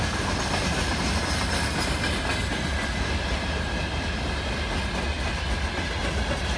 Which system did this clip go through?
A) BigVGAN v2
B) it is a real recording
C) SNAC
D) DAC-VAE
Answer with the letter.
B